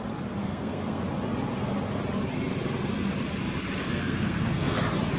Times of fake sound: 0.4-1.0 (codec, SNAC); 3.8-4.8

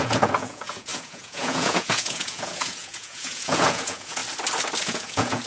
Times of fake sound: 0.0-4.2 (vocoder, Vocos); 4.8-5.5